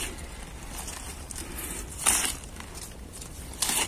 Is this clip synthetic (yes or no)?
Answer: no